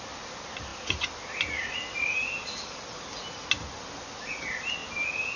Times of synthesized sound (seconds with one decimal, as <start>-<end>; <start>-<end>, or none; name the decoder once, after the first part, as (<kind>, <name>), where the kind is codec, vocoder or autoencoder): none